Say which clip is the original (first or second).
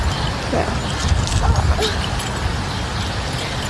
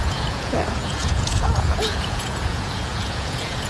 first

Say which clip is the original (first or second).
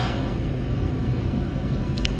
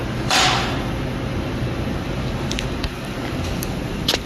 second